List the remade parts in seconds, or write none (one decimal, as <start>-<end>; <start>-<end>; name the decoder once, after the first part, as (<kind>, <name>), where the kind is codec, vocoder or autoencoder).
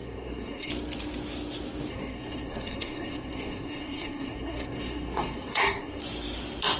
0.0-0.7 (codec, SNAC); 1.9-6.0